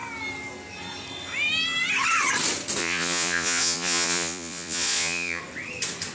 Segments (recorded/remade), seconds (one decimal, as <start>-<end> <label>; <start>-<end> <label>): 0.0-2.8 recorded; 2.8-5.4 remade; 5.4-6.1 recorded